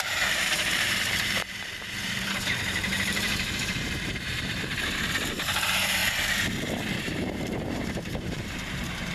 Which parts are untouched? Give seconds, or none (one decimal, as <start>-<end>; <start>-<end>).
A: 6.0-7.0